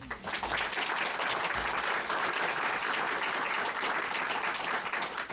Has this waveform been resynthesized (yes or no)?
no